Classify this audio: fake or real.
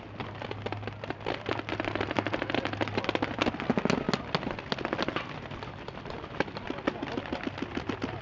real